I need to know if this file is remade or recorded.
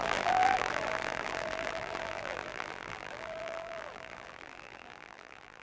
remade